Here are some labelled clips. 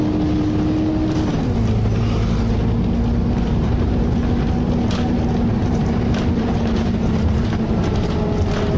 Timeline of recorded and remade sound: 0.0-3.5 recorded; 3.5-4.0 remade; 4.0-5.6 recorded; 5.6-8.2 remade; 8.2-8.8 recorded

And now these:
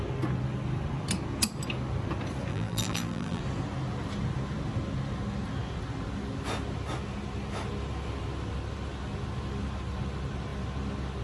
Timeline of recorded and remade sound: 0.0-2.5 recorded; 2.5-3.4 remade; 3.4-11.2 recorded

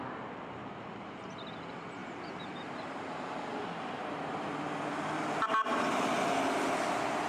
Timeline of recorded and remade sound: 0.0-0.6 recorded; 0.6-1.3 remade; 1.3-2.0 recorded; 2.0-4.1 remade; 4.1-7.3 recorded